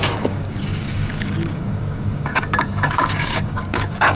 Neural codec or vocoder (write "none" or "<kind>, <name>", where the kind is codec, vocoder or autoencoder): codec, DAC